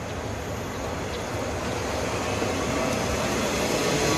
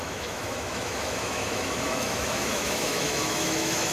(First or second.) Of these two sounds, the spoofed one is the second